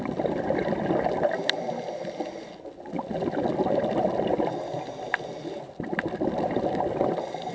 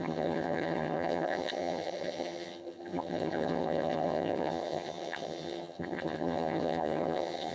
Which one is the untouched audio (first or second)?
first